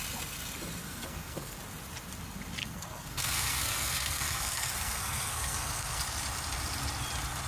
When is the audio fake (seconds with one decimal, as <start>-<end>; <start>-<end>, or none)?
0.8-1.6; 2.6-6.0